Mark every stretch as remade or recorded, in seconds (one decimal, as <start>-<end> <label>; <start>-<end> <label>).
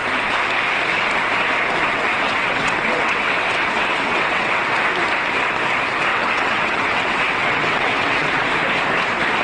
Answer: 0.0-1.9 recorded; 1.9-4.6 remade; 4.6-6.1 recorded; 6.1-8.3 remade; 8.3-9.4 recorded